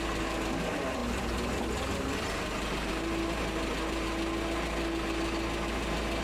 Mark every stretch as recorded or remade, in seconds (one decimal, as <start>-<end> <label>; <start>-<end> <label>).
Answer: 0.0-6.2 recorded